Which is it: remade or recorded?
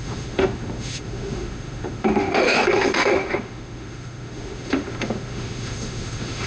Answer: remade